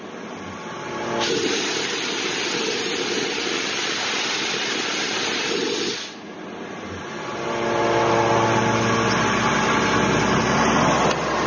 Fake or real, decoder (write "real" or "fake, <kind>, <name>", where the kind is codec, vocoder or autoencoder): real